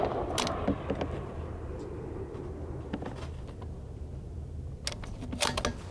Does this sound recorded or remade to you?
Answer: recorded